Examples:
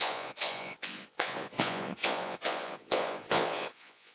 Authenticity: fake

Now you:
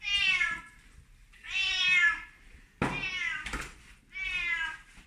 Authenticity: real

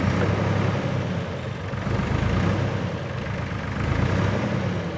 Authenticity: real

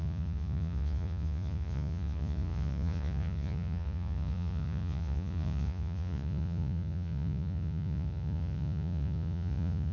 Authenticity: fake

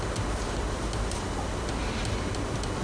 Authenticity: real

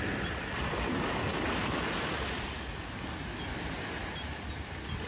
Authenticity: real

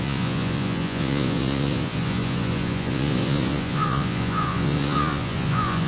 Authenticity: fake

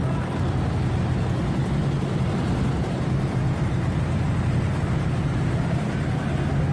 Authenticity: real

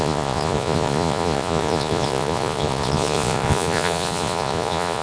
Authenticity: fake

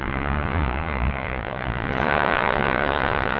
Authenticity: fake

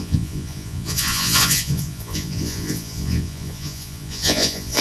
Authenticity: fake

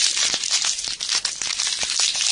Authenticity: real